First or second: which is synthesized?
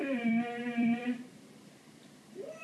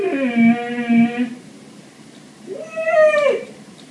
first